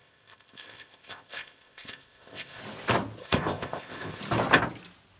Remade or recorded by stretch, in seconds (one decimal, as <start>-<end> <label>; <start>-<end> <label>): 0.0-2.6 remade; 2.6-3.2 recorded; 3.2-4.2 remade; 4.2-5.2 recorded

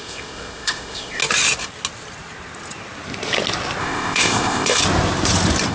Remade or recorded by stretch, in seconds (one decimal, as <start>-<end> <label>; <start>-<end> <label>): 0.0-1.2 remade; 1.2-3.8 recorded; 3.8-4.8 remade; 4.8-5.7 recorded